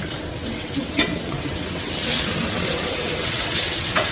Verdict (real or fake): fake